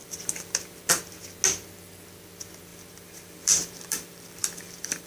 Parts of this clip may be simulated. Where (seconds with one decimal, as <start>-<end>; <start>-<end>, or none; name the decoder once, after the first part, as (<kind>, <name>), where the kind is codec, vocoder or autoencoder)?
0.0-1.0 (vocoder, BigVGAN v2); 2.7-5.1